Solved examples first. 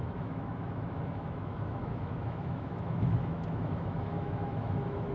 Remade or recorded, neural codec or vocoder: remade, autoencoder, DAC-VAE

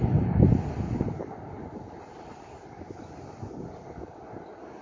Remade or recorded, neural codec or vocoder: recorded